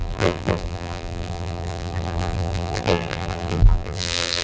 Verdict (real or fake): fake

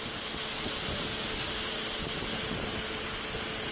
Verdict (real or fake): real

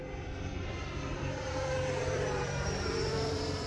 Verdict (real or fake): fake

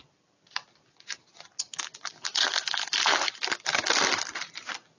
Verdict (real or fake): real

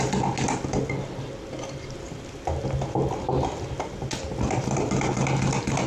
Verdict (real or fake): real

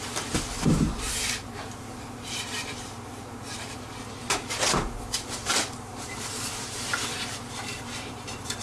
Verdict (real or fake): fake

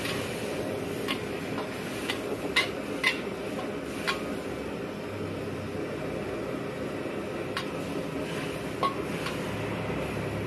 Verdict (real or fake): real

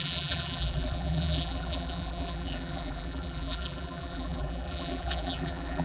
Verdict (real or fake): fake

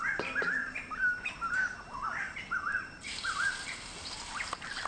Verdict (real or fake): fake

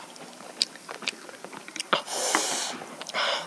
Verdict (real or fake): fake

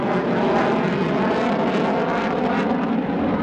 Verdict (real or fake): real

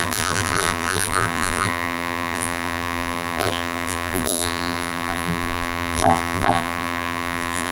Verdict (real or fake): fake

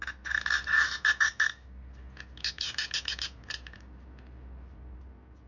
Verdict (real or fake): real